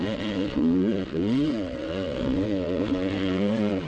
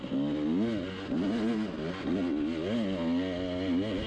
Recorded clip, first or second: second